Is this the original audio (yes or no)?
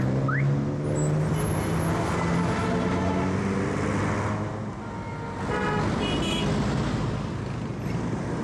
yes